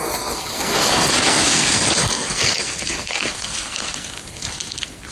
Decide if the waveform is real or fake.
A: fake